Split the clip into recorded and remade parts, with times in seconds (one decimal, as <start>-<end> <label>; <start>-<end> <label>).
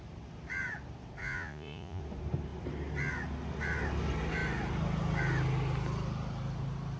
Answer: 0.0-1.2 recorded; 1.2-2.0 remade; 2.0-7.0 recorded